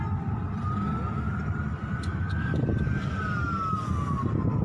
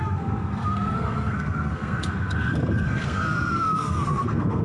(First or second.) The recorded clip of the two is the first